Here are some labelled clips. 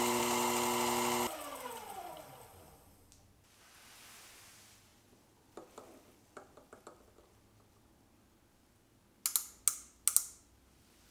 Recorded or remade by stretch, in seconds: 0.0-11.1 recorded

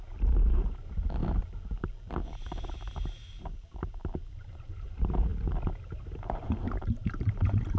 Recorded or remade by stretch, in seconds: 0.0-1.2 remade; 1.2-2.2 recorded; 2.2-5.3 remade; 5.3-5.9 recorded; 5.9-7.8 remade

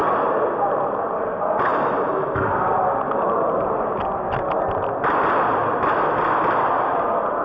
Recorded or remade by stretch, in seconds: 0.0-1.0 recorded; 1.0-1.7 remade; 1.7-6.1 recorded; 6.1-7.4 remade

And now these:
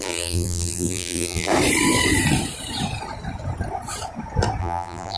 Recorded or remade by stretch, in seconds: 0.0-1.5 remade; 1.5-4.6 recorded; 4.6-5.2 remade

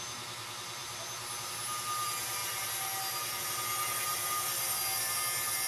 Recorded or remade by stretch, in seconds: 0.0-4.1 recorded; 4.1-4.8 remade; 4.8-5.7 recorded